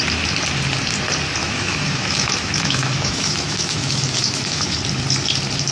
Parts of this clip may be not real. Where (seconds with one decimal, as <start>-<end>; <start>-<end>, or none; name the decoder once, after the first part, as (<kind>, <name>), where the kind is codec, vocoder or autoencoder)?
1.4-4.8 (autoencoder, DAC-VAE)